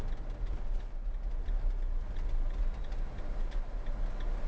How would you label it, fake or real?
real